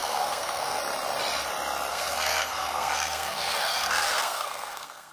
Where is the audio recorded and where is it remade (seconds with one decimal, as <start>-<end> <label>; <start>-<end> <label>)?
0.0-0.8 remade; 0.8-1.9 recorded; 1.9-5.1 remade